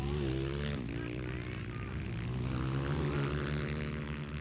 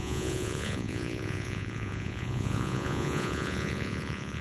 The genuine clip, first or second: first